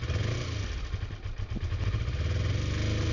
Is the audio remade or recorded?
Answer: recorded